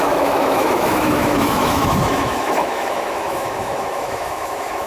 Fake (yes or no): yes